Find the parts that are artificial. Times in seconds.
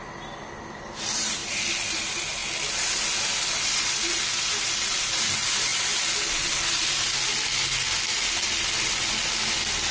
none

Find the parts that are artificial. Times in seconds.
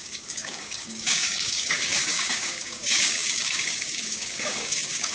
0.0-5.1 (codec, DAC)